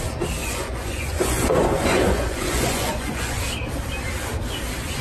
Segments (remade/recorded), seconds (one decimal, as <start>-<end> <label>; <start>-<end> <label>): 0.0-0.4 recorded; 0.4-3.4 remade; 3.4-5.0 recorded